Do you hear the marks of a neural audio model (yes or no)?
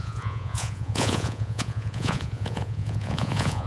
yes